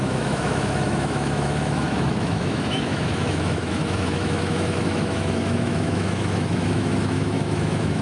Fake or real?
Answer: fake